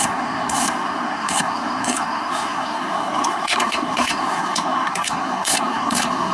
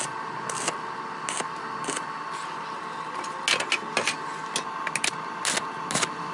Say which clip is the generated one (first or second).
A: first